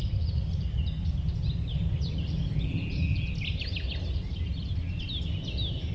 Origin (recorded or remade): recorded